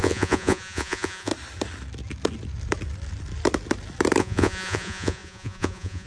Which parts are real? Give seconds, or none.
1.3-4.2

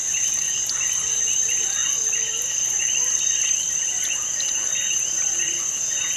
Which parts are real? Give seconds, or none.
0.0-6.2